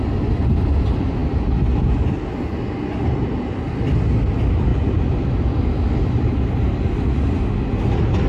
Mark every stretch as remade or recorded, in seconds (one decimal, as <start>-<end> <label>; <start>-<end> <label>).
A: 0.0-8.3 recorded

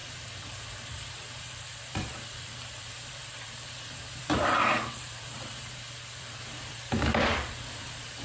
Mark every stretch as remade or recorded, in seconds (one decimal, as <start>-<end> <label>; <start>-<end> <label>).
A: 0.0-1.1 recorded; 1.1-8.2 remade

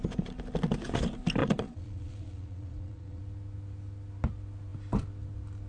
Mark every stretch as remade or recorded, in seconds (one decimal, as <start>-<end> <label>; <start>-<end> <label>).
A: 0.0-1.4 recorded; 1.4-3.2 remade; 3.2-5.7 recorded

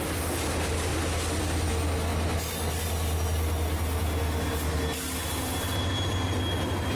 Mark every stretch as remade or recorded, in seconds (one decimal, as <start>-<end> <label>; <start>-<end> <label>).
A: 0.0-7.0 recorded

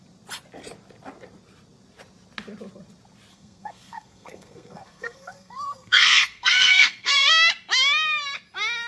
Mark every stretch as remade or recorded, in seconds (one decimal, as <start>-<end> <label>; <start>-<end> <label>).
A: 0.0-3.3 recorded; 3.3-7.3 remade; 7.3-8.9 recorded

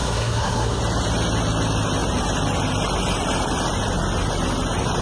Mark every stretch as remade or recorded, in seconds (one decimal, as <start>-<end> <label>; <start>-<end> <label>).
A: 0.0-0.8 remade; 0.8-5.0 recorded

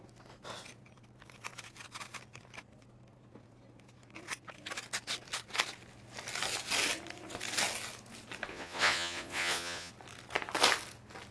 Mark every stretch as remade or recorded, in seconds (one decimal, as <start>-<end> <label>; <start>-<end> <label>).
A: 0.0-8.5 recorded; 8.5-9.9 remade; 9.9-11.3 recorded

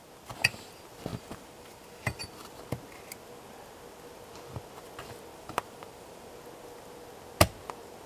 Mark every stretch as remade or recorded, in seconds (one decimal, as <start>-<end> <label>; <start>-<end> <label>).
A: 0.0-1.1 recorded; 1.1-2.0 remade; 2.0-5.3 recorded; 5.3-6.3 remade; 6.3-8.1 recorded